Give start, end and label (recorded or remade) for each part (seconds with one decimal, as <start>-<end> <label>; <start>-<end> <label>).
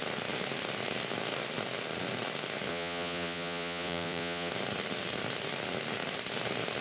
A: 0.0-2.7 recorded; 2.7-4.5 remade; 4.5-6.8 recorded